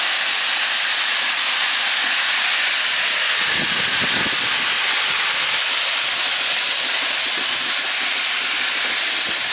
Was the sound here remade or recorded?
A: recorded